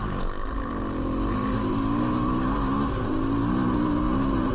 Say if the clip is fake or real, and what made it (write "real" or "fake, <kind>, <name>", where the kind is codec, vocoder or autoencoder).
real